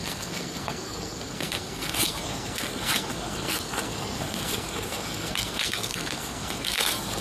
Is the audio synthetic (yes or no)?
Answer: yes